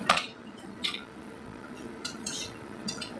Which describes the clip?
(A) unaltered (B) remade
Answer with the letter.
B